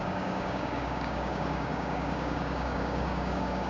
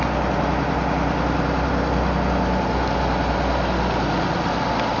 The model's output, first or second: first